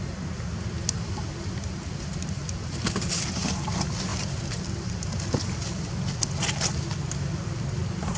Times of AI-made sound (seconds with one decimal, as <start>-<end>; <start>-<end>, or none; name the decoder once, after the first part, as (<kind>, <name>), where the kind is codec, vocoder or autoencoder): none